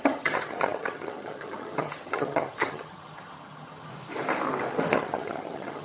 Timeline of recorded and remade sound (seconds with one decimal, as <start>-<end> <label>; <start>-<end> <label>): 0.0-3.9 remade; 3.9-4.9 recorded; 4.9-5.8 remade